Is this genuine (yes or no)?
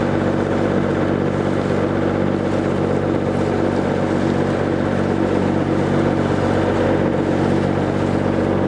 yes